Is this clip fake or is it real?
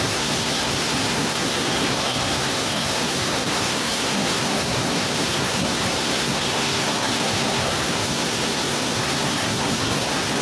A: fake